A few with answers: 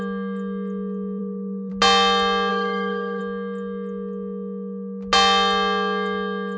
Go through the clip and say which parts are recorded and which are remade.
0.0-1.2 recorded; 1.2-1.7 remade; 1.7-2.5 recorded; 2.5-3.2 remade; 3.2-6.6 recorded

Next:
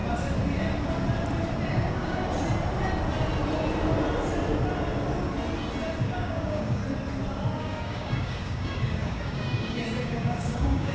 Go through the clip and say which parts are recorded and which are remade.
0.0-1.7 recorded; 1.7-2.2 remade; 2.2-6.0 recorded; 6.0-6.8 remade; 6.8-7.6 recorded; 7.6-10.9 remade

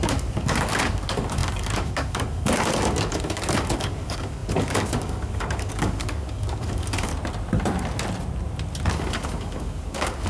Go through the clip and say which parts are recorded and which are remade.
0.0-7.1 remade; 7.1-8.9 recorded; 8.9-10.3 remade

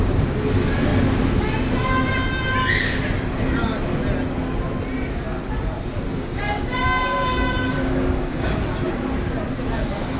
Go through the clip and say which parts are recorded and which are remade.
0.0-6.1 recorded; 6.1-8.6 remade; 8.6-10.2 recorded

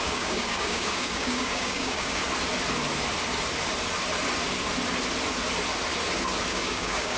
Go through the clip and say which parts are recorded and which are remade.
0.0-2.2 remade; 2.2-6.5 recorded; 6.5-7.2 remade

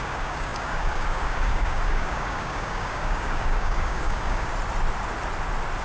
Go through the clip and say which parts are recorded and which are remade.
0.0-4.5 remade; 4.5-5.8 recorded

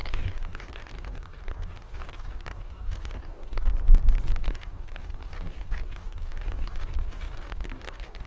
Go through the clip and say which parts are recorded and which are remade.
0.0-3.7 remade; 3.7-4.4 recorded; 4.4-8.3 remade

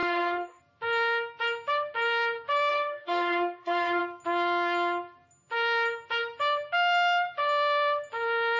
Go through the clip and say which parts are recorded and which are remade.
0.0-0.6 remade; 0.6-2.7 recorded; 2.7-4.0 remade; 4.0-8.6 recorded